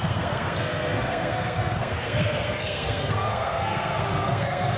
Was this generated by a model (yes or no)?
yes